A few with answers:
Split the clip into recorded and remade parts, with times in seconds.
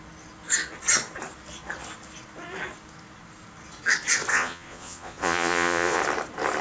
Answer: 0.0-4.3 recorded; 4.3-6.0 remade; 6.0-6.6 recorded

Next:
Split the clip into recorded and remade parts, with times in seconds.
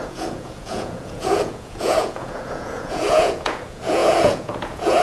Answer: 0.0-5.0 remade